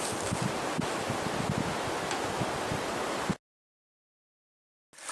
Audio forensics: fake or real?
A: real